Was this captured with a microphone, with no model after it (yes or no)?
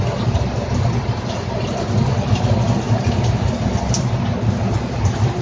yes